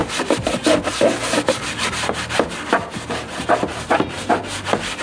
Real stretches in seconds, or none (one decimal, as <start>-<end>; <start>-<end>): 0.0-5.0